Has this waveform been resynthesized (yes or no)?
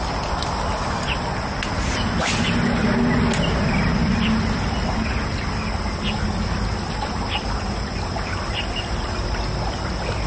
no